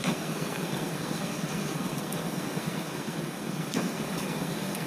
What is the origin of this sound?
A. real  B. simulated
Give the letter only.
B